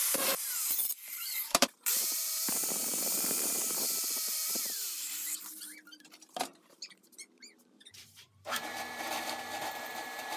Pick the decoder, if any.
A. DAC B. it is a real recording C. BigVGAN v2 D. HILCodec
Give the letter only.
C